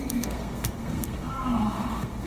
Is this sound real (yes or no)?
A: no